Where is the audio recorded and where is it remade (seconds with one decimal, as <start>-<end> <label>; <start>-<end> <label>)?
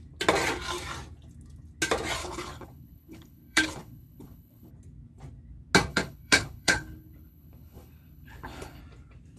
0.0-2.2 recorded; 2.2-4.7 remade; 4.7-5.9 recorded; 5.9-8.8 remade; 8.8-9.4 recorded